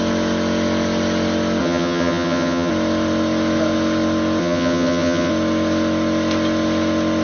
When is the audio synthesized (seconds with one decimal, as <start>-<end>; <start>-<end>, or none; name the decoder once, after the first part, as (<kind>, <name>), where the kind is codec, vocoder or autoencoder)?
1.6-2.7 (vocoder, HiFi-GAN); 4.4-5.3